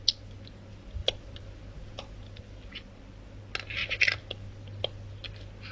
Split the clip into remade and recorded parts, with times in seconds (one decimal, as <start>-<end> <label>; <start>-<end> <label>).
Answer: 0.0-5.7 recorded